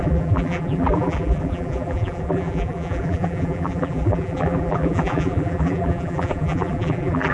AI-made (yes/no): yes